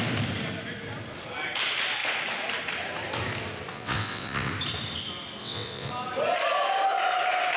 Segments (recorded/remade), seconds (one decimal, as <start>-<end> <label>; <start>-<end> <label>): 0.0-3.7 recorded; 3.7-4.5 remade; 4.5-5.4 recorded; 5.4-5.9 remade; 5.9-7.6 recorded